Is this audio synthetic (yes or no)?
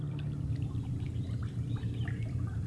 yes